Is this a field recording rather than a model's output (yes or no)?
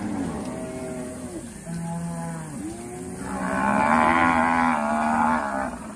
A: yes